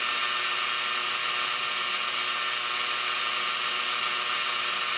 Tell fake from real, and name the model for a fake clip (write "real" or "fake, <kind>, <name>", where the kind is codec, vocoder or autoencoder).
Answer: real